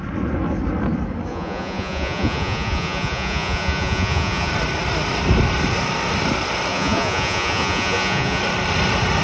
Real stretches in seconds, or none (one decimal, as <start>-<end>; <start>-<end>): 0.0-1.3; 4.5-6.7; 8.4-9.2